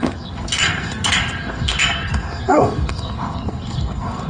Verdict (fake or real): fake